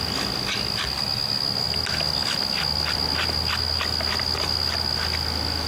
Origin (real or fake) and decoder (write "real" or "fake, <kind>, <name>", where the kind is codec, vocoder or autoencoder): real